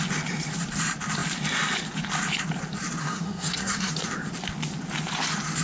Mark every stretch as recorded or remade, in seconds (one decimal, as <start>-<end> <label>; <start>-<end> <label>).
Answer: 0.0-3.0 recorded; 3.0-3.9 remade; 3.9-5.6 recorded